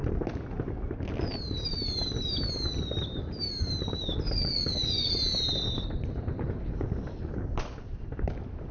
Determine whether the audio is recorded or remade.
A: recorded